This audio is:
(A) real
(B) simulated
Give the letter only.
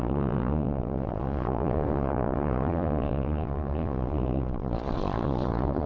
B